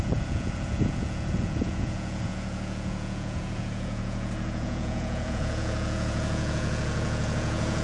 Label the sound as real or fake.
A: fake